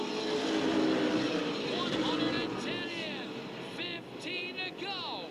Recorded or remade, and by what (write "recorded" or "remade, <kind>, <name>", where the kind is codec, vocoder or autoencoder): recorded